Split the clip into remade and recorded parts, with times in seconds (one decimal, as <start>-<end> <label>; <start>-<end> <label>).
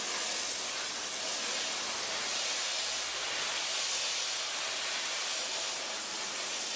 0.0-6.8 recorded